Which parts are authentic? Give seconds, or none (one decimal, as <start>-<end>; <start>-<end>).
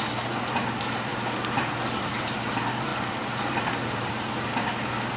1.1-2.0; 2.9-3.5